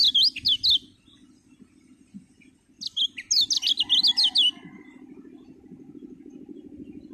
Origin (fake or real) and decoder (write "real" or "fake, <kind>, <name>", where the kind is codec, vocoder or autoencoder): real